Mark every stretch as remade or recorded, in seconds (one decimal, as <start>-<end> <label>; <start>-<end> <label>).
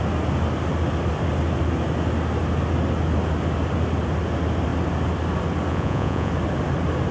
0.0-5.7 recorded; 5.7-6.3 remade; 6.3-7.1 recorded